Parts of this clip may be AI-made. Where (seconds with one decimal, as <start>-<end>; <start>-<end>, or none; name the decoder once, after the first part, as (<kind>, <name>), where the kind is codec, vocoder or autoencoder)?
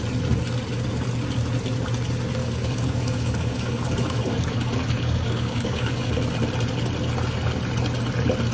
2.4-6.1 (codec, DAC)